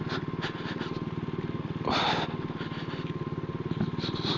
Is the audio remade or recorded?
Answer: recorded